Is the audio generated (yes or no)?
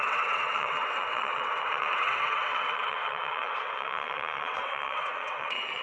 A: yes